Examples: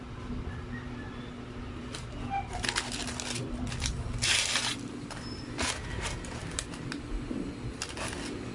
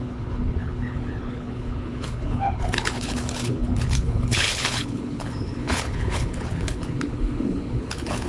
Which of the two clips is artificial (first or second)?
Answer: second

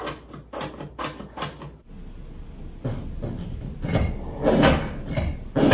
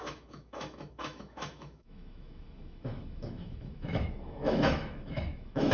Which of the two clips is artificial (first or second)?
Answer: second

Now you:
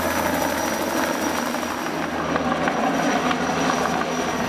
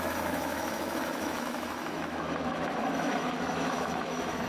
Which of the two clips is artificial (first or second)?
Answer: second